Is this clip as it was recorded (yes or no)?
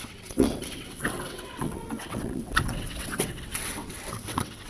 no